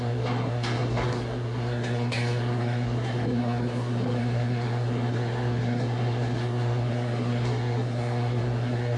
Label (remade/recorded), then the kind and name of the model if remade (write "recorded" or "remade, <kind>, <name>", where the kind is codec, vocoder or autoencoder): remade, codec, SNAC